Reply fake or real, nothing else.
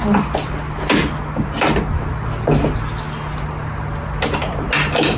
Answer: real